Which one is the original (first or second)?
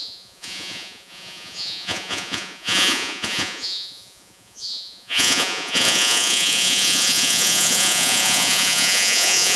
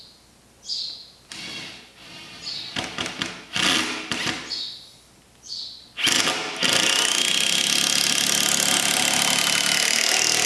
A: second